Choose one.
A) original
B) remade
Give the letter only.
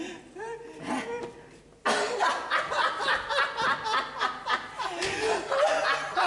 A